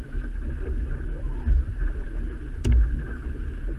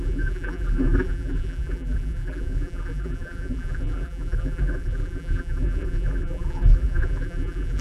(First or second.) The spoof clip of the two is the second